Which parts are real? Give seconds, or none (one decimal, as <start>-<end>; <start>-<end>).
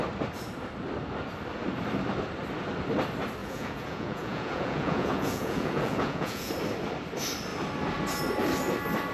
0.0-3.4; 6.5-9.1